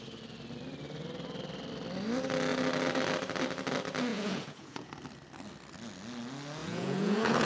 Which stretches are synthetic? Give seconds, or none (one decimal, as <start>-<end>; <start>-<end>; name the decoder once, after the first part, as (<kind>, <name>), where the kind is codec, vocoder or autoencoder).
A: 4.1-4.9 (vocoder, Vocos); 6.6-7.5